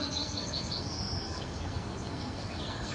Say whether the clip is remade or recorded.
remade